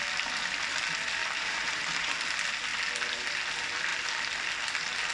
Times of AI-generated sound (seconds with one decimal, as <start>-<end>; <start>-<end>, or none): 1.2-2.1